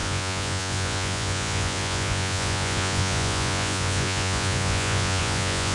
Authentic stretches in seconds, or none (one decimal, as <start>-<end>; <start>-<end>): none